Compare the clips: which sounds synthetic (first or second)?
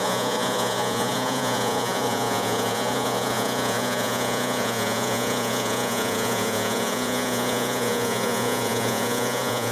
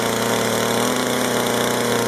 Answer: first